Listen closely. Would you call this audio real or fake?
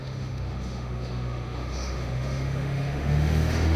fake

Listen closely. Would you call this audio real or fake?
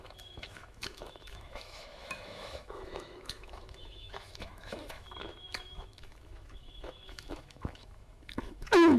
fake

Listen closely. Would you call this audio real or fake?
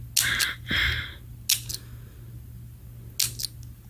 real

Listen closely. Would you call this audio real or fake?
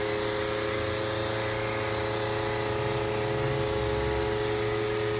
real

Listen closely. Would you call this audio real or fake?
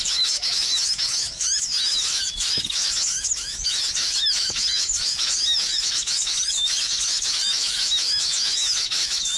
fake